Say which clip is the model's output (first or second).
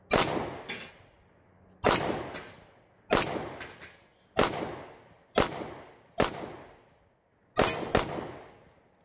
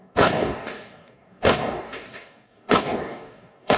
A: second